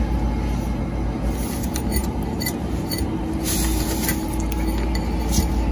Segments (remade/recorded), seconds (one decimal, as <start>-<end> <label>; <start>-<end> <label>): 0.0-2.0 recorded; 2.0-4.4 remade; 4.4-5.7 recorded